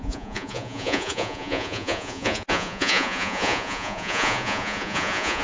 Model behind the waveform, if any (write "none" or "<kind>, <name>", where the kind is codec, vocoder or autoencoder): vocoder, Vocos